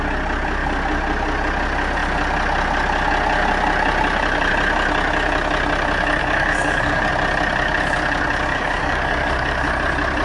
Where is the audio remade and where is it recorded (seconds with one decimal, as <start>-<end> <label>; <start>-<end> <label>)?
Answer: 0.0-6.2 recorded; 6.2-7.1 remade; 7.1-8.5 recorded; 8.5-9.7 remade; 9.7-10.2 recorded